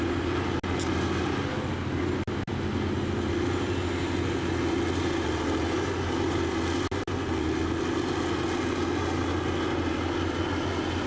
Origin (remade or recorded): recorded